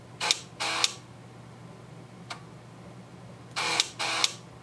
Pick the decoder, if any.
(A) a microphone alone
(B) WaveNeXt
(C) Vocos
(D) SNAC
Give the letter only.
A